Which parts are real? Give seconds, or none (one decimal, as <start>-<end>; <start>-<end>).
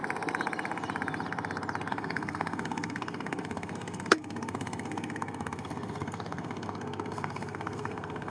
0.0-1.9